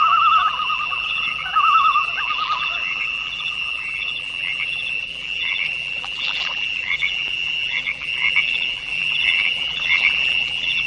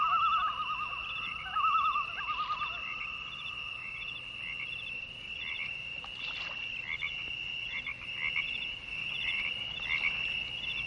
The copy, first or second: first